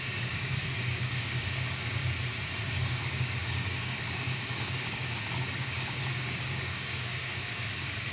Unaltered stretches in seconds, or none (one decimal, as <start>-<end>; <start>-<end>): 2.0-2.7